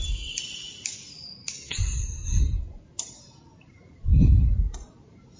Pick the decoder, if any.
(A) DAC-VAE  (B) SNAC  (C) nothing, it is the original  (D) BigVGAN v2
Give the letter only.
C